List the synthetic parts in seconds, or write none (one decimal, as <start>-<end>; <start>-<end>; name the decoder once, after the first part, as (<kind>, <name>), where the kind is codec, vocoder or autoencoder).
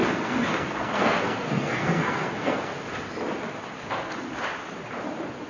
0.0-2.7 (codec, SNAC)